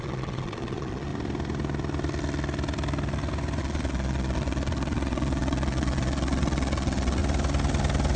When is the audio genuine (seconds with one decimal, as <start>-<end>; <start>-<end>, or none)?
1.1-3.6; 7.2-8.2